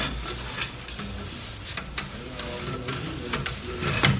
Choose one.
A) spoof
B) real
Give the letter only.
B